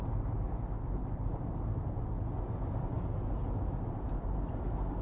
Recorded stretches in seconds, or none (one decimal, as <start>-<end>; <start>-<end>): 0.0-5.0